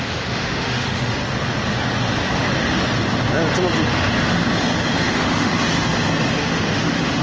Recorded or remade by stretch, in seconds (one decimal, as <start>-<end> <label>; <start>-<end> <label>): 0.0-1.2 remade; 1.2-5.1 recorded; 5.1-5.5 remade; 5.5-6.4 recorded; 6.4-7.2 remade